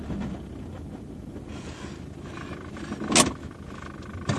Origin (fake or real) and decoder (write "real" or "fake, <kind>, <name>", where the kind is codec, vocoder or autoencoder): real